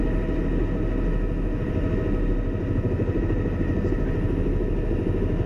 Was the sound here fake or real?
real